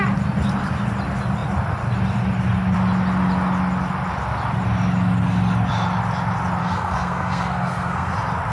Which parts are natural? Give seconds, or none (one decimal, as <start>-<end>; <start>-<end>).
0.0-6.6; 8.1-8.5